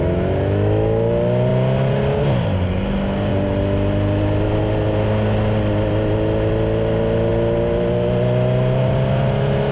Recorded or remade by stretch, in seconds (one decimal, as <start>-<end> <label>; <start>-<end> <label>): 0.0-9.7 recorded